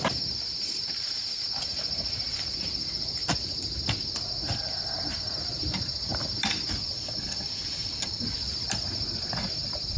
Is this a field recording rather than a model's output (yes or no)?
yes